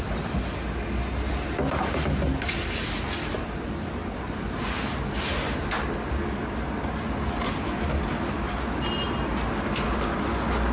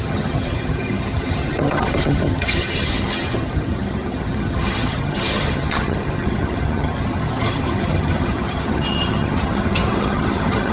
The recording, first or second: first